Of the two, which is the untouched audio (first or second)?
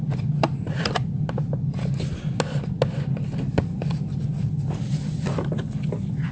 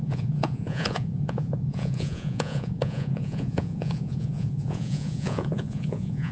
first